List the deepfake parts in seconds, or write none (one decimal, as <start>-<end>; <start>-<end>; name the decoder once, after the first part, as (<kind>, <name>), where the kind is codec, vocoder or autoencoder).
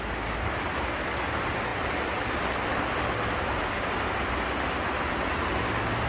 none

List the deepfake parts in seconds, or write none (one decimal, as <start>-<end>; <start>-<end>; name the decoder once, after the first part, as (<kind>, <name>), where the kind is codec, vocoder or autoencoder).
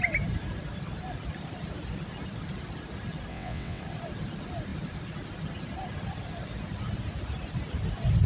3.3-3.8 (vocoder, WaveNeXt)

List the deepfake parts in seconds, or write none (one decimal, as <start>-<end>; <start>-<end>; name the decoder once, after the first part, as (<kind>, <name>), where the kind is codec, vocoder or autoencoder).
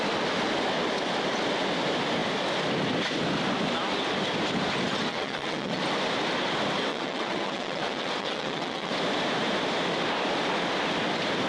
5.1-5.8 (vocoder, WaveNeXt); 6.9-8.9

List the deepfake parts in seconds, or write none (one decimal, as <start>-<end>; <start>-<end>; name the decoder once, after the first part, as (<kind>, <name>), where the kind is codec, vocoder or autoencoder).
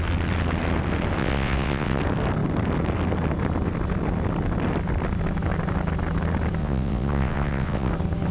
1.2-2.0 (vocoder, WaveNeXt); 6.6-7.9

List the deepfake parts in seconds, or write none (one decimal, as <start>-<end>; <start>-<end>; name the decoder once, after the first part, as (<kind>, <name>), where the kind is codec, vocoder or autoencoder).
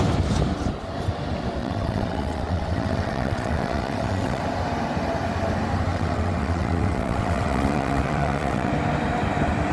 1.6-4.4 (vocoder, WaveNeXt); 5.9-8.7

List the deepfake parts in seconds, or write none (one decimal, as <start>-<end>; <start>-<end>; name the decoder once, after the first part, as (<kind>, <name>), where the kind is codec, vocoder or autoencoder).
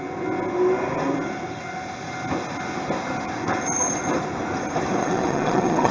5.0-5.9 (vocoder, WaveNeXt)